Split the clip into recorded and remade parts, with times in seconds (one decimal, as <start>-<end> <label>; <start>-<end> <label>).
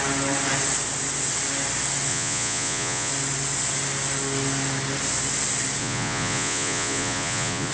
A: 0.0-2.1 recorded; 2.1-3.1 remade; 3.1-5.8 recorded; 5.8-7.7 remade